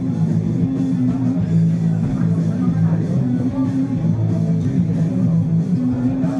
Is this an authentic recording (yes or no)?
yes